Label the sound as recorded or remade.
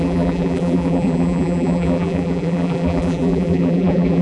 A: remade